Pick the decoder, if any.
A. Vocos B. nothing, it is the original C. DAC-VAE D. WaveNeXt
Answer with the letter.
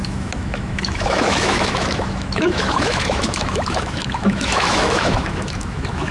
C